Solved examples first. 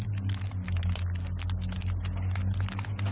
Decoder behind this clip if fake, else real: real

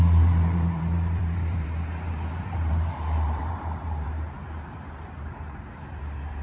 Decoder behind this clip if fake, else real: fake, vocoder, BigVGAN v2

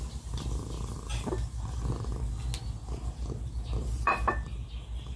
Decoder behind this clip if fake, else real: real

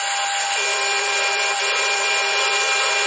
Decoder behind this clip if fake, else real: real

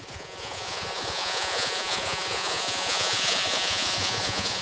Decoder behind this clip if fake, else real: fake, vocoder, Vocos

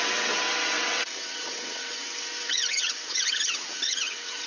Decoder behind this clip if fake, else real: fake, vocoder, WaveNeXt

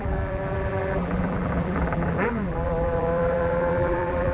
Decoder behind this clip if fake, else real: fake, vocoder, BigVGAN v2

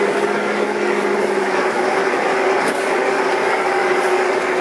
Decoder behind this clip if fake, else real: fake, codec, DAC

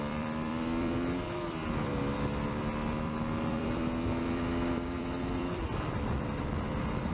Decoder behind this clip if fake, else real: fake, vocoder, BigVGAN v2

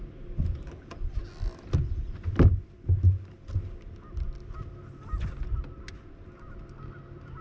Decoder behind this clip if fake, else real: real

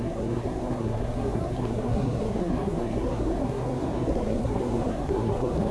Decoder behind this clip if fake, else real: fake, codec, SNAC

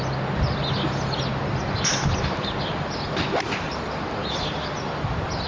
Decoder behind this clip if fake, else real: real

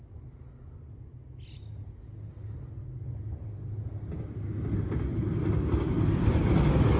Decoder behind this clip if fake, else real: real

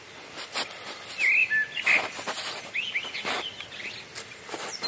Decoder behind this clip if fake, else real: real